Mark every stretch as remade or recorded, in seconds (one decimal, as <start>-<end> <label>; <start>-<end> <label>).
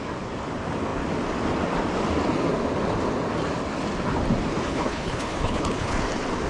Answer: 0.0-4.7 recorded; 4.7-6.0 remade; 6.0-6.5 recorded